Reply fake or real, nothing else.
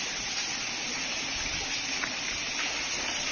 real